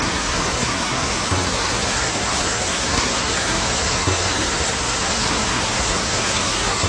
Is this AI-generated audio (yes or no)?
yes